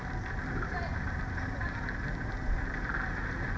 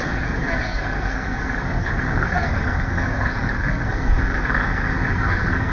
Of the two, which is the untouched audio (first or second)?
first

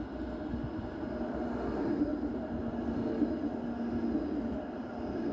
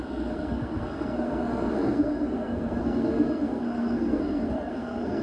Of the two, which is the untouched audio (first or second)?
first